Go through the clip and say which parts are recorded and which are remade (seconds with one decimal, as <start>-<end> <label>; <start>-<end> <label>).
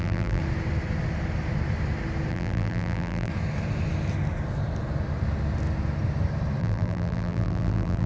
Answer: 0.0-0.4 remade; 0.4-2.3 recorded; 2.3-3.3 remade; 3.3-6.6 recorded; 6.6-8.1 remade